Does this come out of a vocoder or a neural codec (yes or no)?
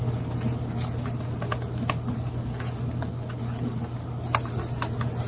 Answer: no